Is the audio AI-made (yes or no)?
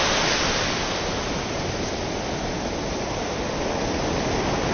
no